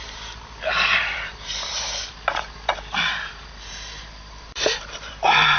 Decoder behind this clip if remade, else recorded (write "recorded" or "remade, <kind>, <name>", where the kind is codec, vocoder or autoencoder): remade, vocoder, BigVGAN v2